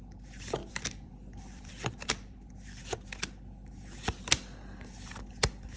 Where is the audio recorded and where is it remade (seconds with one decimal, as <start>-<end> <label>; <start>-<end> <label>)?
0.0-0.6 recorded; 0.6-2.5 remade; 2.5-5.8 recorded